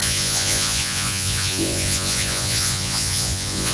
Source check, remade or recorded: remade